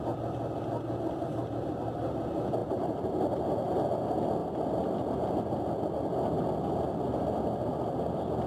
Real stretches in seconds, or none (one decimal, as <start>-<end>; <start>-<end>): 0.0-1.4; 2.2-2.6; 3.1-8.5